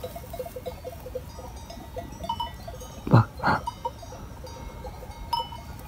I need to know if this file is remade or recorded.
recorded